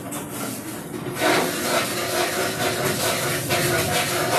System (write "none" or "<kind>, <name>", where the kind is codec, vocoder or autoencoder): none